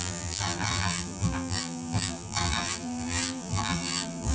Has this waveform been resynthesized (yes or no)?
yes